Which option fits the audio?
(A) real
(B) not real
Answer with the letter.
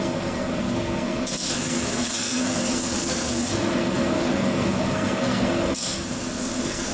B